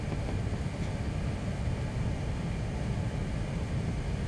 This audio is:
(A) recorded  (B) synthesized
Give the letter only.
A